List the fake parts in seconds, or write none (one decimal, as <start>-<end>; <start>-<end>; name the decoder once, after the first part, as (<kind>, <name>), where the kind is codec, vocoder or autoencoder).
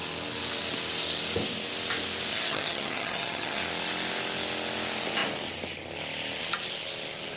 2.3-3.6 (vocoder, HiFi-GAN)